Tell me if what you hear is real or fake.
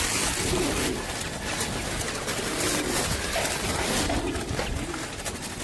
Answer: real